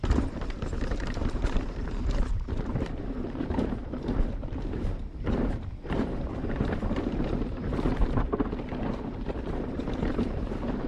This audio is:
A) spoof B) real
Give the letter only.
A